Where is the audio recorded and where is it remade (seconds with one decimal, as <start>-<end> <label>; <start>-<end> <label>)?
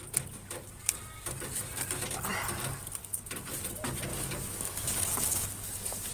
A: 0.0-3.0 recorded; 3.0-3.5 remade; 3.5-4.1 recorded; 4.1-6.1 remade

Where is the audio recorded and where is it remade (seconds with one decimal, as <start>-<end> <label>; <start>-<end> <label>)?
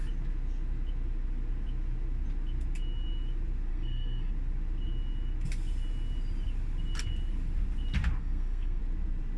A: 0.0-3.7 recorded; 3.7-4.3 remade; 4.3-8.2 recorded; 8.2-8.8 remade; 8.8-9.4 recorded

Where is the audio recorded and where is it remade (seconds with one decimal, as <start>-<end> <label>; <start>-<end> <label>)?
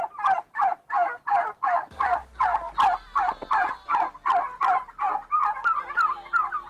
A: 0.0-6.7 recorded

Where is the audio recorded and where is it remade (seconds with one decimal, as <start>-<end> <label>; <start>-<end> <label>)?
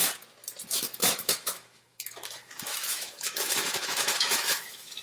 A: 0.0-0.7 recorded; 0.7-5.0 remade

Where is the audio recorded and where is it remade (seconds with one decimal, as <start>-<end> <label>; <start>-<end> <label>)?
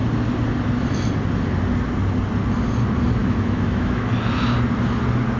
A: 0.0-3.2 recorded; 3.2-4.1 remade; 4.1-5.4 recorded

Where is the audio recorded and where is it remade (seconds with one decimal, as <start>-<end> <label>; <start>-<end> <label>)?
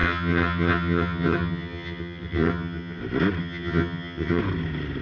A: 0.0-3.0 remade; 3.0-3.4 recorded; 3.4-4.4 remade; 4.4-5.0 recorded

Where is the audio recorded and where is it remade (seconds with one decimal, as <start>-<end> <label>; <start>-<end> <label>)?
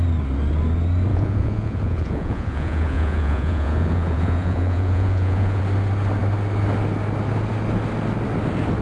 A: 0.0-1.1 recorded; 1.1-5.6 remade; 5.6-8.8 recorded